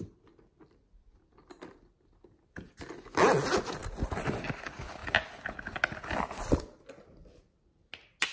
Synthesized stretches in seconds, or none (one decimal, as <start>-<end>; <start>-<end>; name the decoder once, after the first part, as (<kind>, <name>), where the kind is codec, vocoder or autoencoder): none